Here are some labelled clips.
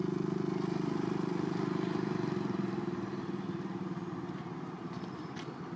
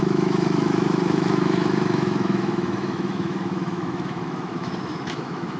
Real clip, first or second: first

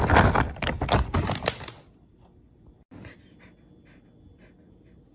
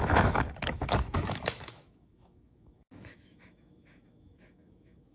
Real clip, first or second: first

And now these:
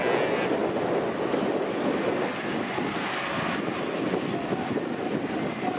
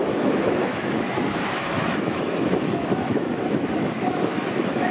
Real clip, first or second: first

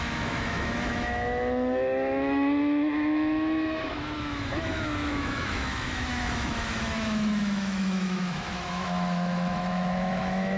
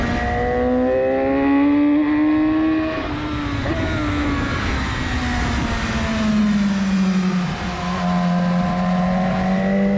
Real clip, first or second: second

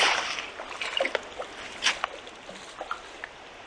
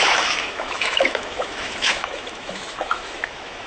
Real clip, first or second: first